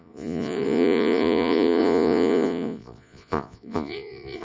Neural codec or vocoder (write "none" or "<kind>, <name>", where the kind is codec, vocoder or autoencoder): vocoder, Vocos